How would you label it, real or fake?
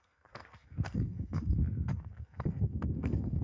fake